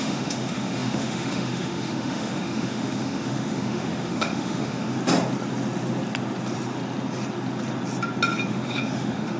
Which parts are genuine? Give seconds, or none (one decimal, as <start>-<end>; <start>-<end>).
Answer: 5.0-8.5